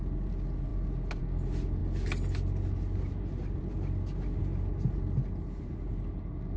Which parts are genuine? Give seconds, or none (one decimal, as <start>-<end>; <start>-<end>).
0.0-6.6